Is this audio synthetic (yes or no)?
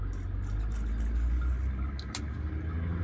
no